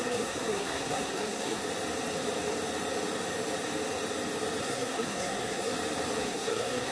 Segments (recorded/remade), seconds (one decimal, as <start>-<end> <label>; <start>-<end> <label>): 0.0-1.6 remade; 1.6-4.6 recorded; 4.6-5.7 remade; 5.7-6.2 recorded; 6.2-6.9 remade